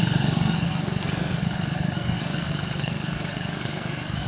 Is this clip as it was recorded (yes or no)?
no